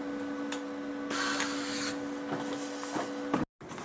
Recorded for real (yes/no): yes